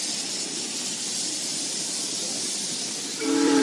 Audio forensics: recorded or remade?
remade